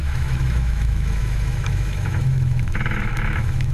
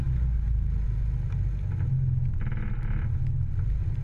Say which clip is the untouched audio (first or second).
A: second